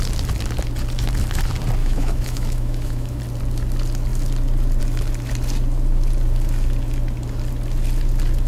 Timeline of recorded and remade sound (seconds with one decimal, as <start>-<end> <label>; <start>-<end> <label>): 0.0-1.8 recorded; 1.8-3.2 remade; 3.2-8.5 recorded